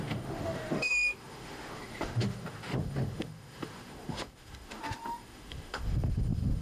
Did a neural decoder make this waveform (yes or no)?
yes